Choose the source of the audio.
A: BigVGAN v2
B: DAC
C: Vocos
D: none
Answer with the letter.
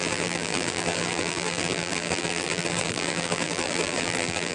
A